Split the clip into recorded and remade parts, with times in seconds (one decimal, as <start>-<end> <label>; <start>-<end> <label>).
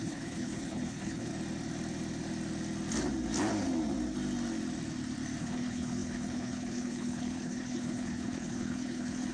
0.0-1.3 remade; 1.3-5.4 recorded; 5.4-9.3 remade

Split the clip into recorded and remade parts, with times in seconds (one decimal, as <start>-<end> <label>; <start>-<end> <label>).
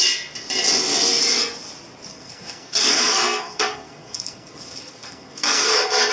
0.0-2.1 recorded; 2.1-6.1 remade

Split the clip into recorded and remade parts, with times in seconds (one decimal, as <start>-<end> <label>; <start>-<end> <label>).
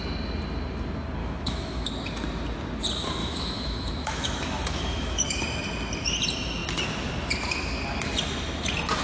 0.0-1.2 recorded; 1.2-1.9 remade; 1.9-3.2 recorded; 3.2-5.4 remade; 5.4-9.0 recorded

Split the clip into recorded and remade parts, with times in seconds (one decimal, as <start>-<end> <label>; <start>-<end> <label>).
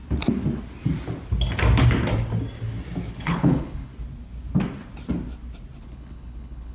0.0-3.1 recorded; 3.1-3.9 remade; 3.9-5.8 recorded; 5.8-6.7 remade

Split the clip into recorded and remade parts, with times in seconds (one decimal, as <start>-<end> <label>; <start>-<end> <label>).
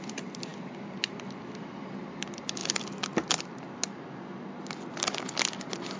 0.0-6.0 recorded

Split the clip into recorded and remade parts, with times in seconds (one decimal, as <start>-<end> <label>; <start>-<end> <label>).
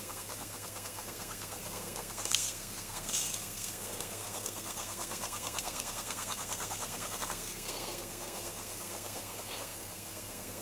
0.0-10.6 remade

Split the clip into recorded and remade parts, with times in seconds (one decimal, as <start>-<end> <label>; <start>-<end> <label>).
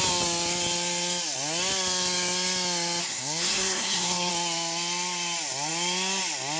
0.0-3.0 recorded; 3.0-4.3 remade; 4.3-6.6 recorded